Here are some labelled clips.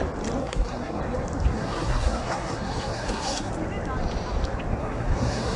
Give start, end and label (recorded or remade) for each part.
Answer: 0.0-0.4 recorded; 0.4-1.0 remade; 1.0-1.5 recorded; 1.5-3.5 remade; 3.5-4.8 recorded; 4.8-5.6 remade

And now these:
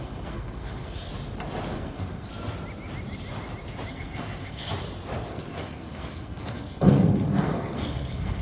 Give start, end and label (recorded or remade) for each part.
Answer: 0.0-1.1 remade; 1.1-1.7 recorded; 1.7-2.3 remade; 2.3-3.9 recorded; 3.9-4.7 remade; 4.7-5.3 recorded; 5.3-8.4 remade

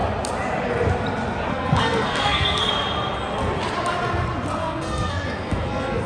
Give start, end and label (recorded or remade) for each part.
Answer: 0.0-1.5 recorded; 1.5-2.7 remade; 2.7-4.6 recorded; 4.6-6.1 remade

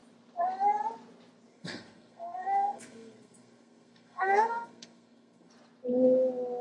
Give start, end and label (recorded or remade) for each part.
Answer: 0.0-1.5 recorded; 1.5-5.5 remade; 5.5-6.6 recorded

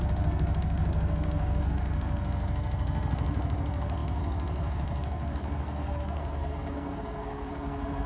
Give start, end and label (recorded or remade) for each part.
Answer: 0.0-8.1 remade

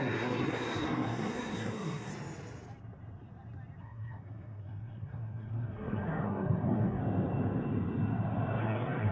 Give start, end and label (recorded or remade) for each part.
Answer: 0.0-2.1 remade; 2.1-3.8 recorded; 3.8-7.0 remade; 7.0-8.6 recorded; 8.6-9.1 remade

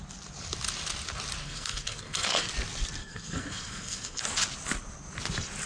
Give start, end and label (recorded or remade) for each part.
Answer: 0.0-1.4 recorded; 1.4-2.5 remade; 2.5-3.0 recorded; 3.0-4.2 remade; 4.2-5.7 recorded